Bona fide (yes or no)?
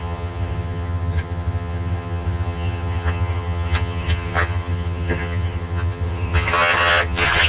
no